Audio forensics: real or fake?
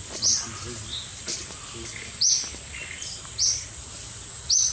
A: real